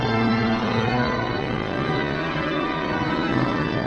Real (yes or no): no